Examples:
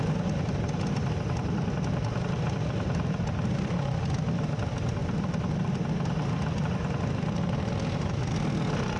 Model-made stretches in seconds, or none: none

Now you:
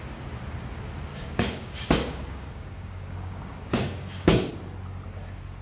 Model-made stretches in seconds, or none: 1.1-4.5

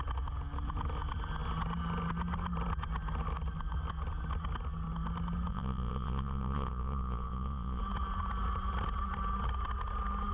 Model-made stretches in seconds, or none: 5.5-7.8

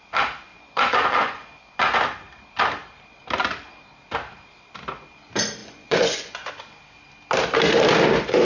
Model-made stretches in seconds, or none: 0.5-1.8; 5.6-6.5

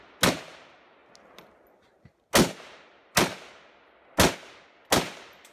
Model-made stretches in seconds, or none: none

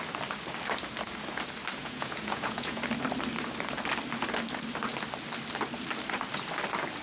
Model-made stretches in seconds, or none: 1.8-2.8

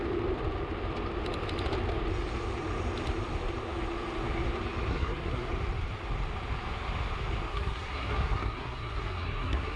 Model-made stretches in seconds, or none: 4.9-5.5; 7.5-9.8

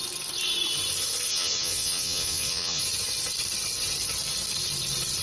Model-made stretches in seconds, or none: 1.3-2.8